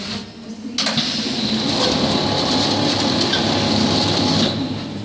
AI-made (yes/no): no